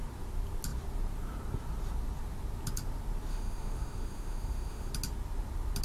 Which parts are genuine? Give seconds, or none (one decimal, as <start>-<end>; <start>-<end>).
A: 0.0-3.3; 4.9-5.8